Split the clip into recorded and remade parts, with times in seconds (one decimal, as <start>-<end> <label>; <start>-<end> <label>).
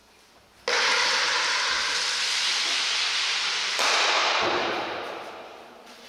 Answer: 0.0-2.9 recorded; 2.9-6.1 remade